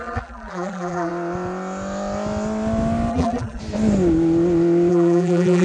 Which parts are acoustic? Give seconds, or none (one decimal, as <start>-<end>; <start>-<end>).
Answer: 1.1-3.1; 3.6-4.9